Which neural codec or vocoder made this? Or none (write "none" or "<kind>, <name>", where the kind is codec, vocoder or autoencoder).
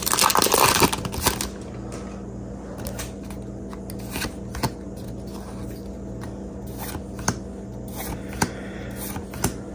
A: none